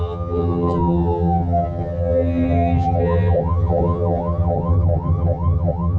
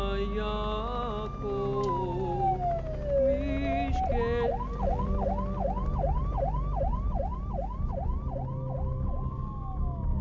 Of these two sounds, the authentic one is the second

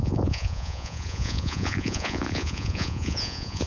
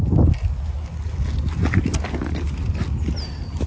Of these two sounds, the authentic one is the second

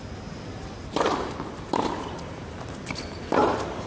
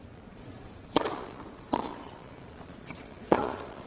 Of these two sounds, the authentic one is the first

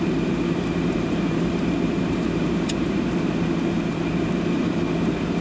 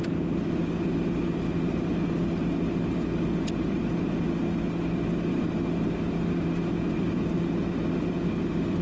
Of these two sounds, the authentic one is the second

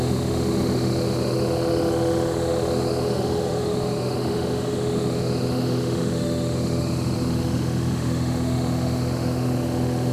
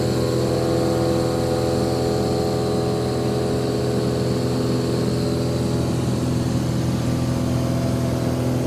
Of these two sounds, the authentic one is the second